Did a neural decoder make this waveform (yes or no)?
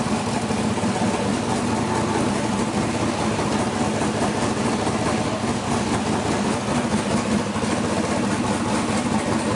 no